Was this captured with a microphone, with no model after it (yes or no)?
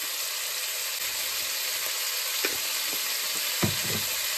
yes